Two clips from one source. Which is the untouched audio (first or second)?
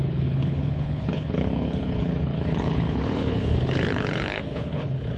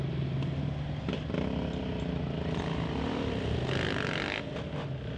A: second